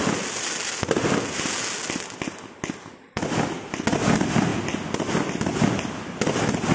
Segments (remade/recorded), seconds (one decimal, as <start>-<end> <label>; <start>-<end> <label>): 0.0-6.7 recorded